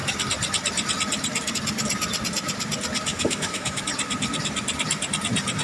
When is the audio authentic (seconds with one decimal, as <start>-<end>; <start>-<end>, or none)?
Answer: 0.0-3.1; 3.8-5.6